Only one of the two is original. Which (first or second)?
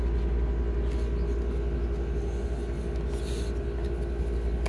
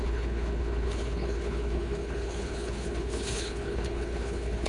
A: first